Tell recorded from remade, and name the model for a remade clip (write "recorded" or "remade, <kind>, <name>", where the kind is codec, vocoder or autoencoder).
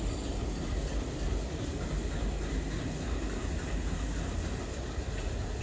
recorded